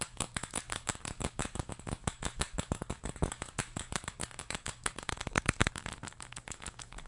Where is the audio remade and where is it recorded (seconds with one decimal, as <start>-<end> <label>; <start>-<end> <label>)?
0.0-7.1 remade